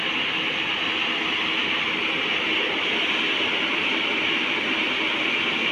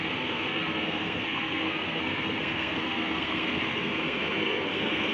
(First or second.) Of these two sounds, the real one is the first